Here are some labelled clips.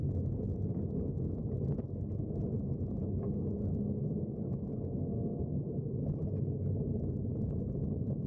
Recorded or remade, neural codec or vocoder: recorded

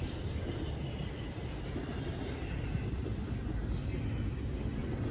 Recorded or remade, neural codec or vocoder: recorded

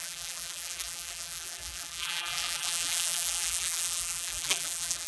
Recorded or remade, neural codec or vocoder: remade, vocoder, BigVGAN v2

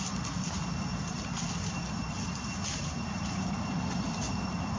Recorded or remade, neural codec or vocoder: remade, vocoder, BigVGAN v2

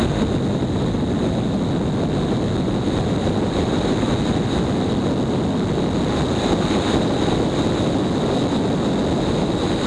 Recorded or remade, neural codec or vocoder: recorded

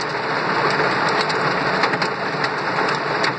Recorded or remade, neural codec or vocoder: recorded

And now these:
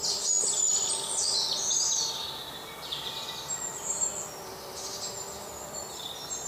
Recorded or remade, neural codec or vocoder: recorded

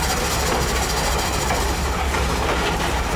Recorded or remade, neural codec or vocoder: remade, vocoder, BigVGAN v2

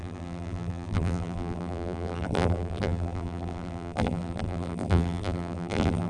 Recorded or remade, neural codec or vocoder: remade, vocoder, BigVGAN v2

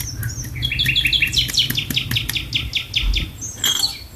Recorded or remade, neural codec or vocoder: recorded